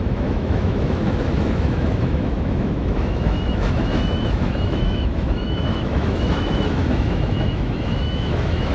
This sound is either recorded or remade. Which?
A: remade